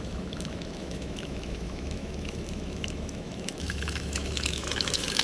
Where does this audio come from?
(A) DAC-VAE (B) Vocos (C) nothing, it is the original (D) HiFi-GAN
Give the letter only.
A